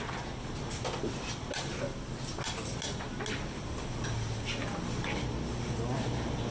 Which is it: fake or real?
real